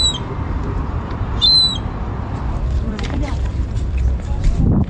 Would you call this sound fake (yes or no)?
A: yes